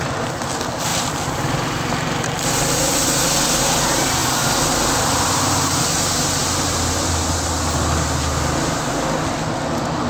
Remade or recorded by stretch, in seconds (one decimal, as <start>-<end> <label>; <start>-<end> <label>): 0.0-0.9 recorded; 0.9-3.6 remade; 3.6-10.1 recorded

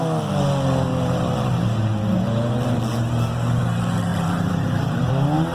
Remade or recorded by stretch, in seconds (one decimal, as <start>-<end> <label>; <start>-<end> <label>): 0.0-4.1 recorded; 4.1-5.1 remade; 5.1-5.5 recorded